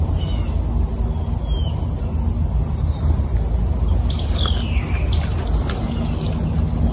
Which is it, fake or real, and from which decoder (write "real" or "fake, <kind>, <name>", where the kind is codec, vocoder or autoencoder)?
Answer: real